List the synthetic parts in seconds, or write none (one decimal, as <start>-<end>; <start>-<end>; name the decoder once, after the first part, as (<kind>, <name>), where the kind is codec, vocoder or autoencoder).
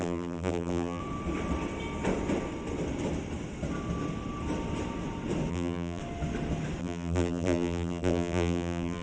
0.0-1.0 (vocoder, BigVGAN v2); 5.5-6.0; 6.8-9.0